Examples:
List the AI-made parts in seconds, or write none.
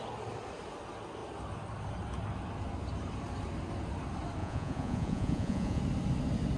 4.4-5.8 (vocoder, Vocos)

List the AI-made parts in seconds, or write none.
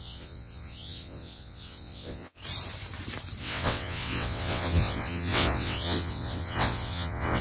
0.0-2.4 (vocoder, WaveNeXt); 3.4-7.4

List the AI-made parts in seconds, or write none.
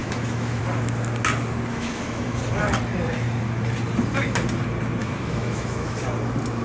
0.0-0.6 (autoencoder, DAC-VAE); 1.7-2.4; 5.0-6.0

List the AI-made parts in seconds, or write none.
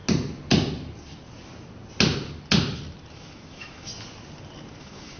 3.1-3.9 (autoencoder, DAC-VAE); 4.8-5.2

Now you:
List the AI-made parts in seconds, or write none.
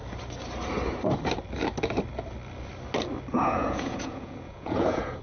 3.3-5.2 (vocoder, Vocos)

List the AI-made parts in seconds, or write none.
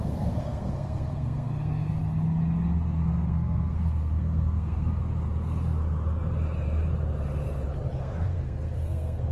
0.0-2.0 (codec, SNAC); 2.9-5.0; 8.0-9.3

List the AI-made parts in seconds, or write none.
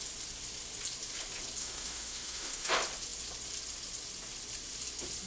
1.6-2.7 (autoencoder, DAC-VAE)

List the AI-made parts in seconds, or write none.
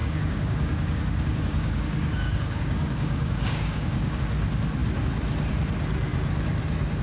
0.0-4.2 (codec, DAC)